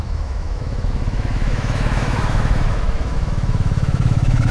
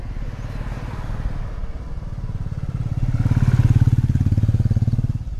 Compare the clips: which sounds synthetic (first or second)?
first